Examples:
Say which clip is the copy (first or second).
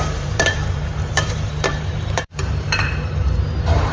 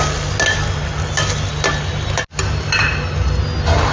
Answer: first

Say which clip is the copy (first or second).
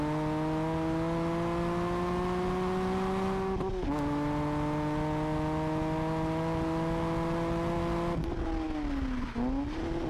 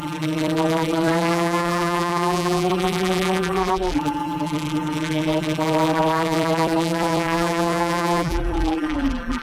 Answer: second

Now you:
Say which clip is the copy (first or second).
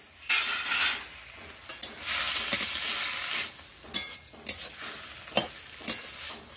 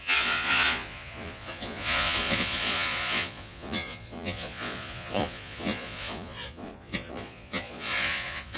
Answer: second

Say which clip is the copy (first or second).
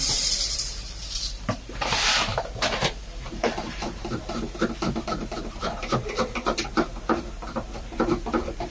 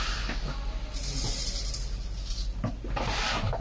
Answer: first